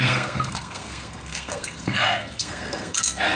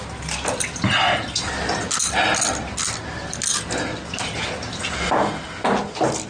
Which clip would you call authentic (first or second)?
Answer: second